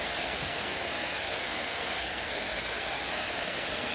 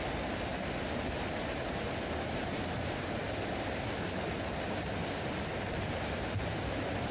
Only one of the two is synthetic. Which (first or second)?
first